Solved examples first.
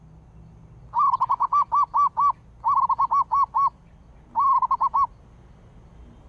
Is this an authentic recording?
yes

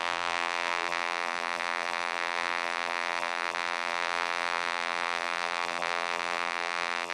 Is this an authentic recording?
no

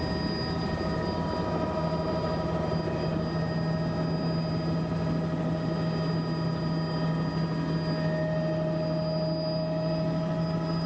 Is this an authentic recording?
yes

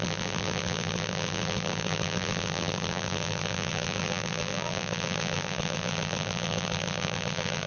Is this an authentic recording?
no